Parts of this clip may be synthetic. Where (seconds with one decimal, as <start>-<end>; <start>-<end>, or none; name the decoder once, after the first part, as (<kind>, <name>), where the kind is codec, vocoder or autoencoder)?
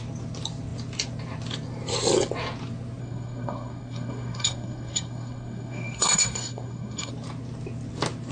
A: 3.0-7.1 (codec, SNAC)